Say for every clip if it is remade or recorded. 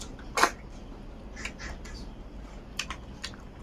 recorded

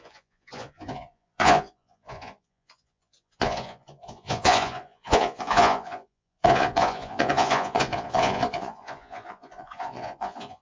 remade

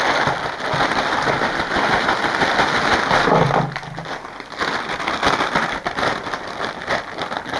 recorded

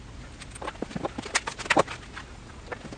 recorded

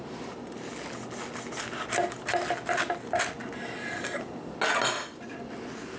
recorded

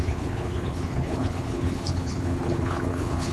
remade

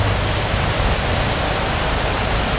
recorded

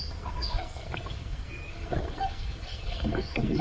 remade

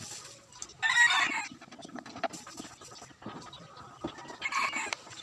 recorded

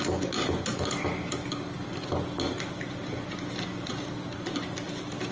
recorded